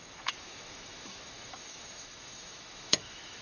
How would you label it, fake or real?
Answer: fake